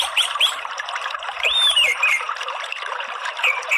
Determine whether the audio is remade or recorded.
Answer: remade